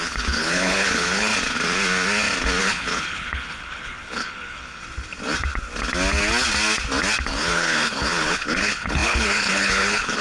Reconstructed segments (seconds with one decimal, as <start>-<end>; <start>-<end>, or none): 0.0-1.3; 2.6-4.8; 7.3-10.2